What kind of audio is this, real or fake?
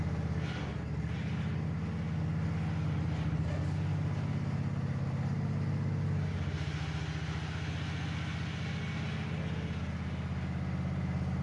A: real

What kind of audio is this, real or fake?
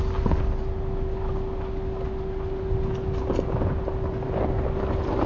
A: real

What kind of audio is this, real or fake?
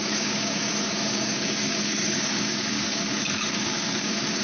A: fake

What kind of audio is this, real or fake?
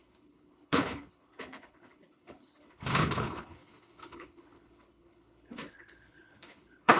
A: fake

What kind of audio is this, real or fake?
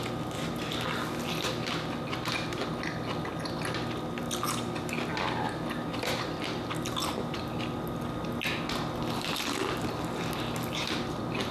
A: real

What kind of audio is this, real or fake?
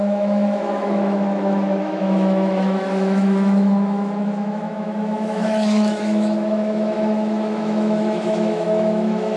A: fake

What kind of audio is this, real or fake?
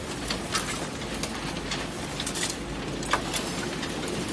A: real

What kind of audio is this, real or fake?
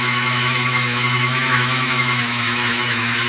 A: fake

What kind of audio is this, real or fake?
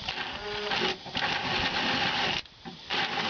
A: real